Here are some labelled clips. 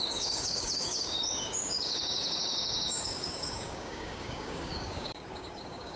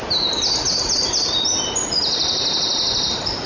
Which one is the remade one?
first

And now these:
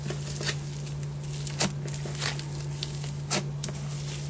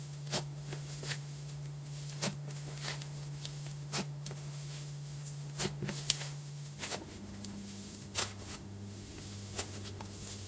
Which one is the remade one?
second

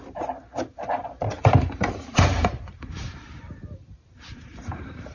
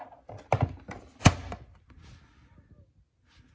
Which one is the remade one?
first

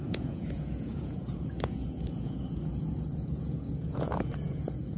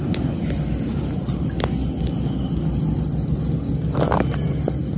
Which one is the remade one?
first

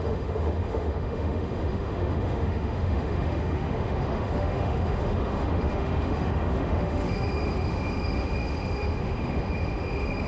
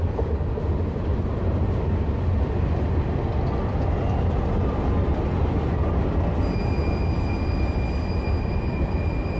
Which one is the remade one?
first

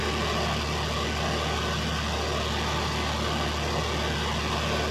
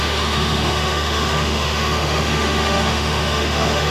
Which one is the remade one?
second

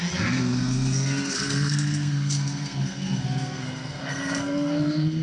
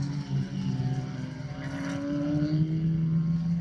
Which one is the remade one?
first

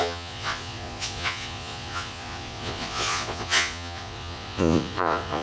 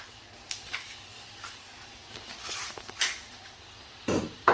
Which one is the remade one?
first